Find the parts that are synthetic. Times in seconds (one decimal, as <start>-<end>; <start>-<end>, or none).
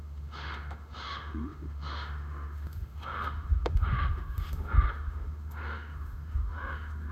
0.0-7.1